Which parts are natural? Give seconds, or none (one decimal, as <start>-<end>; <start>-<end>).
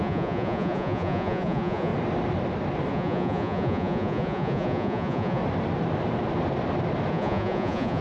1.9-2.9; 5.4-7.1